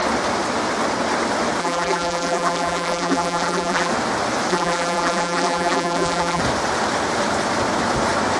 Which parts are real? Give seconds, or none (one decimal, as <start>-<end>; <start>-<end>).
0.0-1.6; 3.9-4.5; 6.4-8.4